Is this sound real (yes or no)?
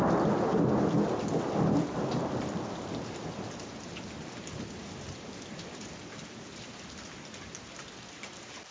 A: yes